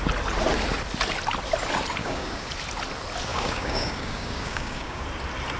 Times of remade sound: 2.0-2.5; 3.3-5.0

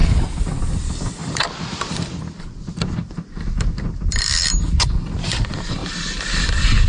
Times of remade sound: 1.2-2.4; 5.8-6.5

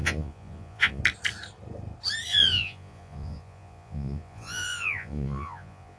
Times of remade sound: 0.0-1.0; 2.3-6.0

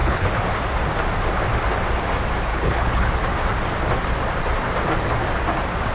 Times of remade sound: 0.0-0.6; 2.5-3.1

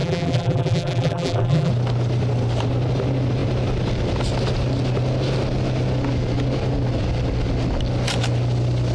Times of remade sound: 0.0-1.7

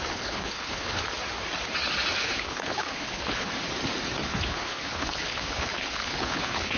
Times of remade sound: 0.0-1.0; 2.2-3.5; 4.2-6.8

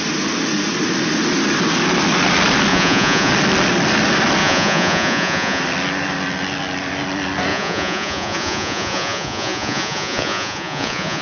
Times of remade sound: 2.7-3.3; 4.4-5.6; 7.5-11.2

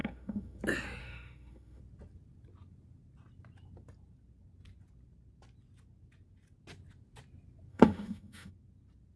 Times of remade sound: 0.0-0.6; 1.0-1.8; 7.7-8.5